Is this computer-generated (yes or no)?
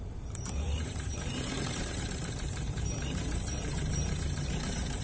yes